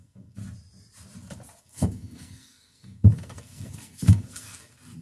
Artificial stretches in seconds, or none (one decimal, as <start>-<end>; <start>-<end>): 0.0-0.4; 1.6-5.0